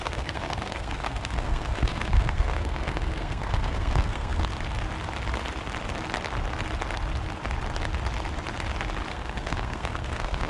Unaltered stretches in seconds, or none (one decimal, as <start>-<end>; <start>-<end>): 4.4-9.1